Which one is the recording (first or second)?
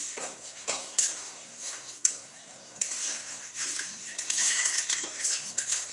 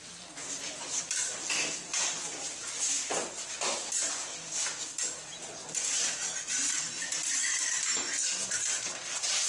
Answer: second